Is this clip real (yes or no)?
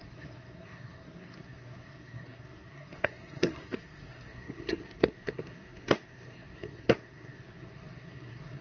no